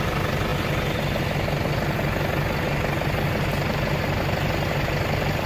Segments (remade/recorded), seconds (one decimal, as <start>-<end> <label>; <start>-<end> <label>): 0.0-5.5 recorded